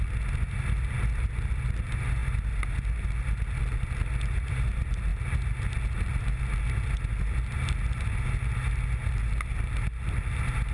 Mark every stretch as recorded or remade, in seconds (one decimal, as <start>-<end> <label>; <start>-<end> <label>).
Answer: 0.0-10.7 recorded